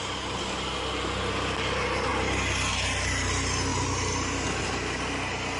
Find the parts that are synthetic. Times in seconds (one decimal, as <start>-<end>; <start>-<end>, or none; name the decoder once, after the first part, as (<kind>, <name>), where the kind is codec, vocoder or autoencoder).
none